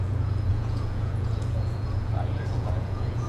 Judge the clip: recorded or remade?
remade